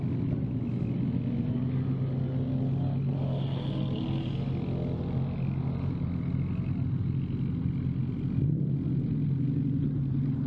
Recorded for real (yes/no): yes